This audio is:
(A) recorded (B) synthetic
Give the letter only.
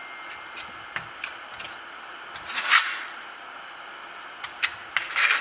A